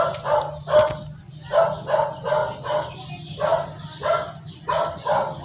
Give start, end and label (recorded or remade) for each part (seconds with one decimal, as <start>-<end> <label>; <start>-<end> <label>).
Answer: 0.0-2.4 remade; 2.4-2.9 recorded; 2.9-5.4 remade